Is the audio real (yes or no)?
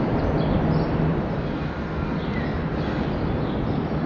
yes